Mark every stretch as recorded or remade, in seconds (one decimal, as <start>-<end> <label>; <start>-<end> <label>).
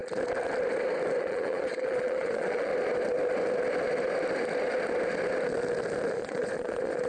0.0-1.2 recorded; 1.2-2.7 remade; 2.7-6.1 recorded; 6.1-7.1 remade